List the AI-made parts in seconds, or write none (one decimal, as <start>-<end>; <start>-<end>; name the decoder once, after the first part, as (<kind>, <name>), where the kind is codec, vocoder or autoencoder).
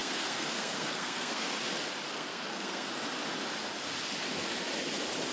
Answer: 0.0-1.5 (codec, SNAC); 2.1-2.9